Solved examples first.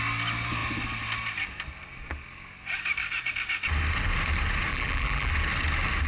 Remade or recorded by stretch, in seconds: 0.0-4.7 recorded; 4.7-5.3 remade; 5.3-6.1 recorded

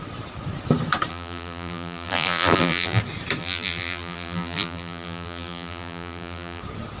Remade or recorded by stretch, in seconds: 0.0-1.1 recorded; 1.1-3.0 remade; 3.0-3.4 recorded; 3.4-6.6 remade; 6.6-7.0 recorded

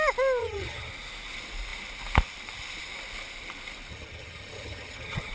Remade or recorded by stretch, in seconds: 0.0-0.4 recorded; 0.4-0.9 remade; 0.9-3.9 recorded; 3.9-5.3 remade

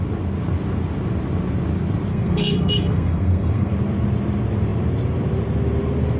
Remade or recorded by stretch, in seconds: 0.0-2.1 recorded; 2.1-3.7 remade; 3.7-6.2 recorded